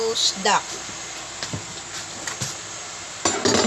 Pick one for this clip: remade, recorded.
recorded